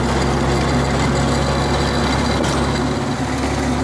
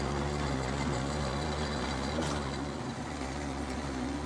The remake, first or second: second